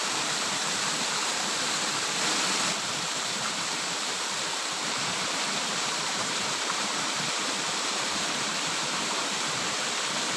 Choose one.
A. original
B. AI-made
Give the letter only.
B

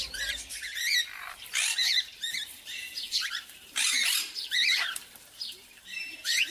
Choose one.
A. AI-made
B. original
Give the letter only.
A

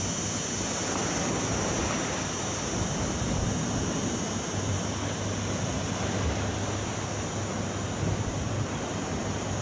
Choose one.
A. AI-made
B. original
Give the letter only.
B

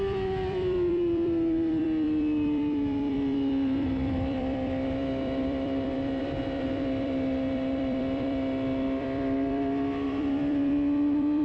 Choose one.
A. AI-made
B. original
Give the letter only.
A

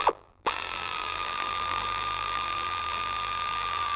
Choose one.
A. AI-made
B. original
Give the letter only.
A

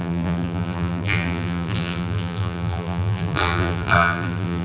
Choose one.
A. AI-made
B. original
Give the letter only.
A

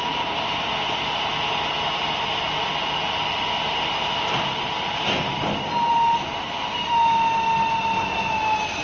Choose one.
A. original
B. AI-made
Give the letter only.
A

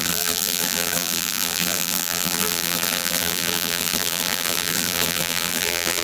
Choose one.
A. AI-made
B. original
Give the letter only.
A